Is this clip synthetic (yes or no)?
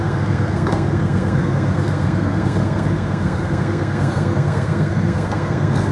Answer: yes